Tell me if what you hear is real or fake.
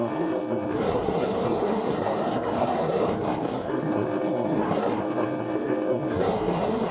fake